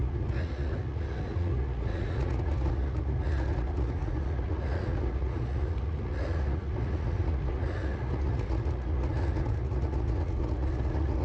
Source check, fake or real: fake